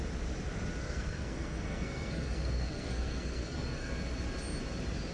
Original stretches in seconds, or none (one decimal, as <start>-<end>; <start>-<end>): 0.0-0.8; 3.9-5.1